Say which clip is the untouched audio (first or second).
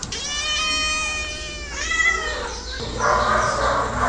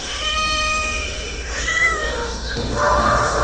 first